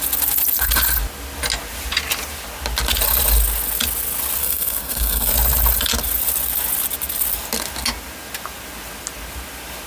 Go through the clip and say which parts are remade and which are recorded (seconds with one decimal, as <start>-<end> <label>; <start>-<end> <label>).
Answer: 0.0-4.4 recorded; 4.4-5.3 remade; 5.3-9.9 recorded